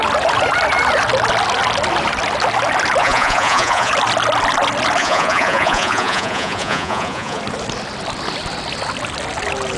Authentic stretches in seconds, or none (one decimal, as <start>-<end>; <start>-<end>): 0.0-3.0; 3.9-5.0; 7.4-9.8